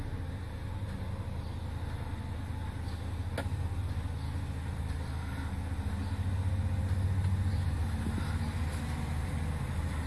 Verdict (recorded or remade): recorded